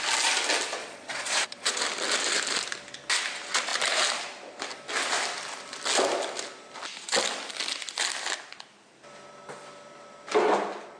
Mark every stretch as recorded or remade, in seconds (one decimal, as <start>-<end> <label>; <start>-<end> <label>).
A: 0.0-0.8 recorded; 0.8-1.8 remade; 1.8-11.0 recorded